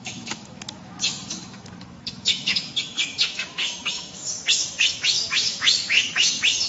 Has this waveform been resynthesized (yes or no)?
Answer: yes